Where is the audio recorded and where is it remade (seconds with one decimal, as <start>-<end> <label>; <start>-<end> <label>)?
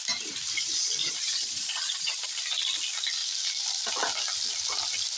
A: 0.0-1.0 recorded; 1.0-2.2 remade; 2.2-5.2 recorded